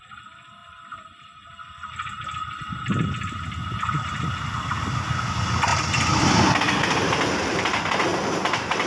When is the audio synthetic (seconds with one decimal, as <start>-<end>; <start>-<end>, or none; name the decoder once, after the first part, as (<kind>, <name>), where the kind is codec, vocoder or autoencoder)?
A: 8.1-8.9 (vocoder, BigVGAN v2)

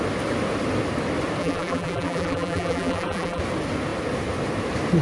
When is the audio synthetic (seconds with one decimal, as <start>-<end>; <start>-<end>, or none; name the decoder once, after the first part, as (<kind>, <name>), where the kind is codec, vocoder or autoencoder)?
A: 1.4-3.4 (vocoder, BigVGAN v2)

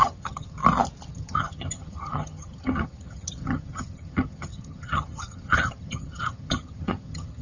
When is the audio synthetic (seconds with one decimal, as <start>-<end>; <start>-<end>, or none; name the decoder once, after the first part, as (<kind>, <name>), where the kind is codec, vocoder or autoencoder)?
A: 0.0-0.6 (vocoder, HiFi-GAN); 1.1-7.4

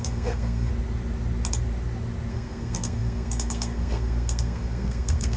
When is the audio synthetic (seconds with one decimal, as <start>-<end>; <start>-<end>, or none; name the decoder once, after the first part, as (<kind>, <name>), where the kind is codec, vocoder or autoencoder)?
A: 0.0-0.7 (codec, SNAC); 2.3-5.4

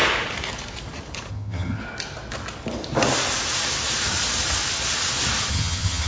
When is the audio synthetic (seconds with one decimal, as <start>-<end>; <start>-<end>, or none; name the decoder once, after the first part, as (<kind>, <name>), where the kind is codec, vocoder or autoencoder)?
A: 1.3-1.8 (vocoder, HiFi-GAN); 5.5-6.1